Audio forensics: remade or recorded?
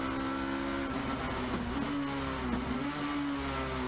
recorded